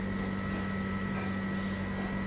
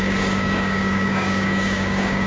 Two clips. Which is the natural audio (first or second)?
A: first